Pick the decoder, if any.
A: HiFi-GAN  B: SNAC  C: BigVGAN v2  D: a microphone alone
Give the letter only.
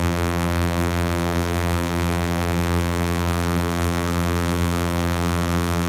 C